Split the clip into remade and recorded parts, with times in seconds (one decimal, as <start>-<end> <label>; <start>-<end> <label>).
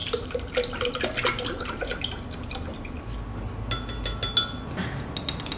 0.0-5.6 recorded